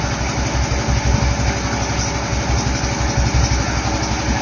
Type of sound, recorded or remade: recorded